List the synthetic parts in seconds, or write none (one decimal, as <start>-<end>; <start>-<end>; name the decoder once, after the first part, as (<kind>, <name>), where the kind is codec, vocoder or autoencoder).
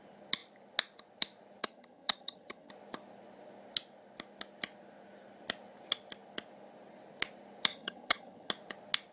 1.6-2.7 (vocoder, HiFi-GAN); 7.7-8.5